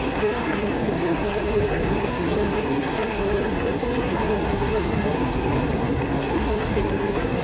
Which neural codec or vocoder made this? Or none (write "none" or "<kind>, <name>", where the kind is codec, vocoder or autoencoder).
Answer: codec, SNAC